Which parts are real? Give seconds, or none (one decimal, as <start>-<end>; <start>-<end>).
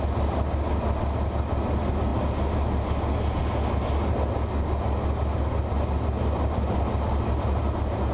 0.0-8.1